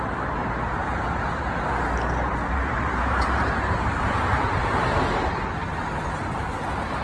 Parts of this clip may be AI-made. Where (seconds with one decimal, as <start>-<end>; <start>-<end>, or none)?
0.8-1.4; 2.3-5.3